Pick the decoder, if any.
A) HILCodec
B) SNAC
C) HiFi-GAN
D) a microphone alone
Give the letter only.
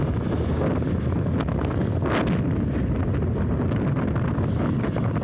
D